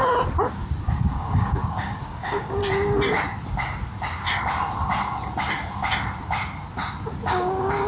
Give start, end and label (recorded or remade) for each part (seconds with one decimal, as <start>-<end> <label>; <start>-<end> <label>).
0.0-1.1 recorded; 1.1-2.6 remade; 2.6-7.3 recorded; 7.3-7.9 remade